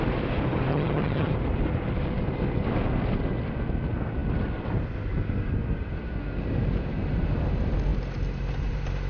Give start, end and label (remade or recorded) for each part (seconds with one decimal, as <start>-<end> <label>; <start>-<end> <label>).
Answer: 0.0-0.7 recorded; 0.7-1.3 remade; 1.3-9.1 recorded